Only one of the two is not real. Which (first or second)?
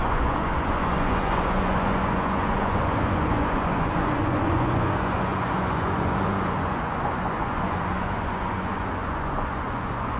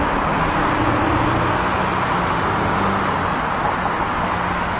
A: first